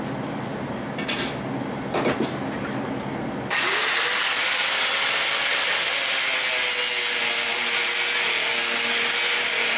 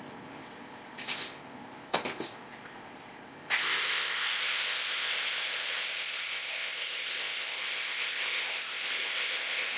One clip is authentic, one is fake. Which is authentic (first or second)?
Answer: first